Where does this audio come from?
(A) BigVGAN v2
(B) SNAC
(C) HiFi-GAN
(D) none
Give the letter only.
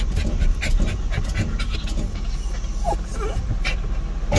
D